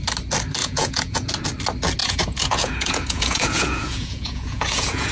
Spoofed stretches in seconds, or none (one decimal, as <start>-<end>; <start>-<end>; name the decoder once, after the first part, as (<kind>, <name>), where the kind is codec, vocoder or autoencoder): 0.6-1.3 (vocoder, Vocos); 2.0-5.1